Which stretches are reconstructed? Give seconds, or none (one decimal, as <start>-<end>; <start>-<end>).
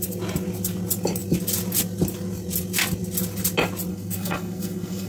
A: 3.9-5.1